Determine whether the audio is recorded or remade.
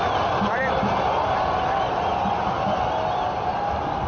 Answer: recorded